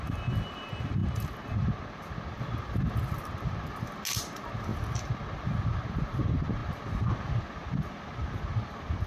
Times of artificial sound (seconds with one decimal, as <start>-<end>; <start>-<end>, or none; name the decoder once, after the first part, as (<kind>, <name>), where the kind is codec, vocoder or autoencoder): none